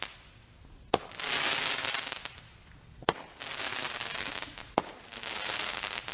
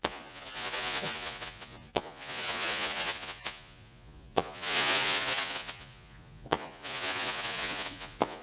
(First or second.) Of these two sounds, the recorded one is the first